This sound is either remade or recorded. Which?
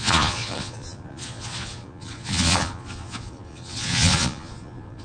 remade